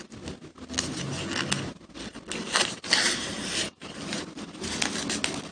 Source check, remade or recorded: recorded